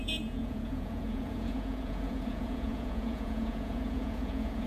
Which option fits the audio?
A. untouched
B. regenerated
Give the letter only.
B